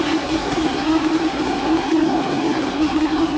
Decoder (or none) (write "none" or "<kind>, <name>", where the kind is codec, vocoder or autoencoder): codec, SNAC